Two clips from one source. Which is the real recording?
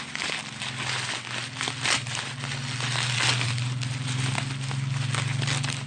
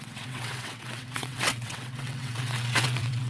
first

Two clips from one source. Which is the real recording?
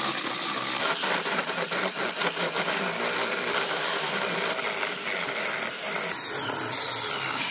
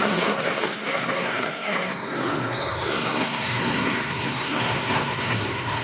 first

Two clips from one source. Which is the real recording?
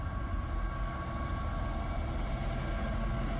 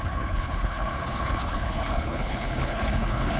first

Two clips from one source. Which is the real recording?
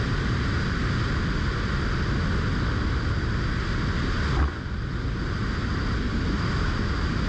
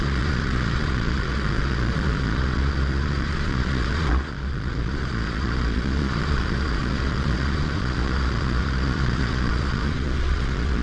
first